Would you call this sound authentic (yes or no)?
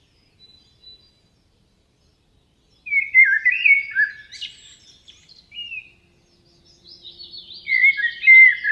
yes